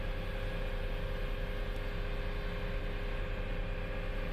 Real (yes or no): yes